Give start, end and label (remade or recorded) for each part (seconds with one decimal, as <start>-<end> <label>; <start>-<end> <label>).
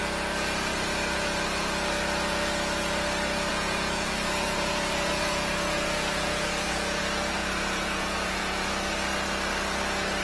0.0-3.5 recorded; 3.5-7.0 remade; 7.0-7.4 recorded; 7.4-8.7 remade; 8.7-10.2 recorded